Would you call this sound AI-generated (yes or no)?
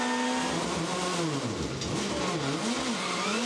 no